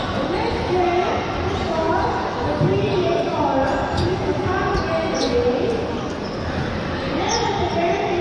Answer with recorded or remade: recorded